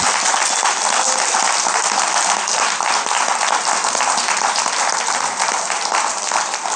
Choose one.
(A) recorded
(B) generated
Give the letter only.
A